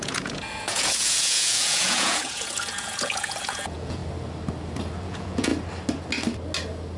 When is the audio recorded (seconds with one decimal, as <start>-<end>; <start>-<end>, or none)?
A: 4.0-5.0; 5.5-7.0